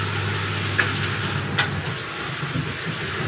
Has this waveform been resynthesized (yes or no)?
no